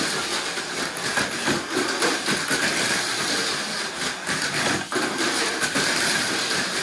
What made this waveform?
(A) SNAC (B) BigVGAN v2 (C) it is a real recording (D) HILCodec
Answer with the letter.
C